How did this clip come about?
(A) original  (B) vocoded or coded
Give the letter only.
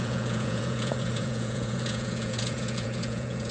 B